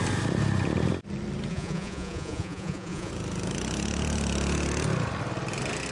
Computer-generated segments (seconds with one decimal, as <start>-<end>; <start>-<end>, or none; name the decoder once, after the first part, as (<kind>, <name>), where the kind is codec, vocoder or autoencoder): 1.5-3.1 (vocoder, Vocos)